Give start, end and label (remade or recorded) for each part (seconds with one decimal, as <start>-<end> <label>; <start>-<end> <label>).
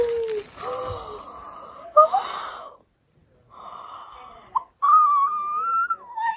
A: 0.0-6.4 recorded